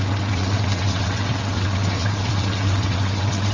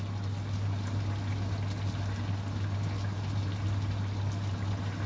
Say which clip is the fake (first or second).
first